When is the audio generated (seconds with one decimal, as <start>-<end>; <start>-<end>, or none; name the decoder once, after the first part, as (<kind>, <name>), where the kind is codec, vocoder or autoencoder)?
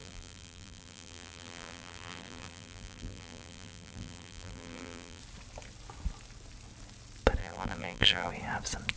0.0-5.2 (vocoder, BigVGAN v2); 7.4-8.3